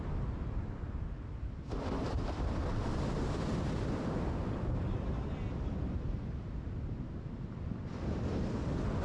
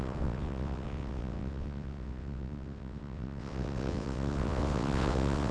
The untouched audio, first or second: first